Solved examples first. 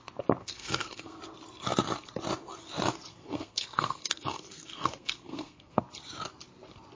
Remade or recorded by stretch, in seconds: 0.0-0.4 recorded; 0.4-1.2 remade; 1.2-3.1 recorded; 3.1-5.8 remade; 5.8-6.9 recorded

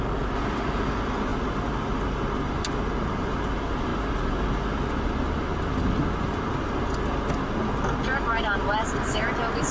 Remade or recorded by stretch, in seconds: 0.0-9.7 recorded

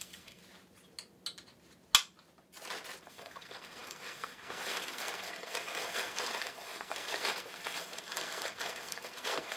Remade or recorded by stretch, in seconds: 0.0-0.4 remade; 0.4-3.0 recorded; 3.0-9.6 remade

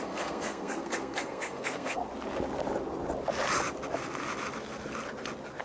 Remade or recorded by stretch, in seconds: 0.0-2.0 remade; 2.0-5.6 recorded

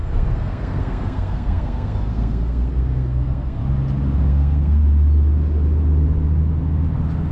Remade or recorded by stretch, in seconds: 0.0-3.6 remade; 3.6-4.3 recorded; 4.3-4.8 remade; 4.8-7.3 recorded

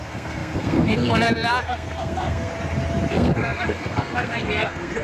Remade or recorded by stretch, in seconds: 0.0-2.5 remade; 2.5-3.1 recorded; 3.1-5.0 remade

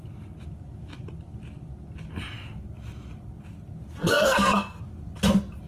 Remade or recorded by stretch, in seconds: 0.0-4.0 recorded; 4.0-4.8 remade; 4.8-5.7 recorded

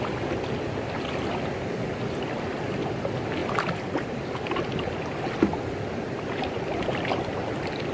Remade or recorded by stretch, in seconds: 0.0-7.9 recorded